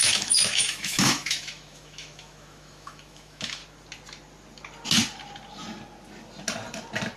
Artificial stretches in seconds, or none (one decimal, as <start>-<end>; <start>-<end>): 0.0-3.6